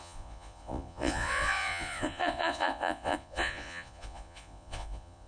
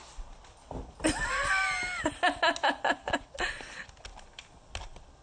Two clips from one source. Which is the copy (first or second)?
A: first